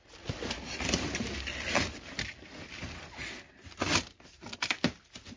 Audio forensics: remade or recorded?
recorded